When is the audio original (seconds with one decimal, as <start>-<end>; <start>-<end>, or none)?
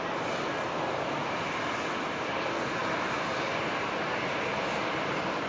0.0-5.5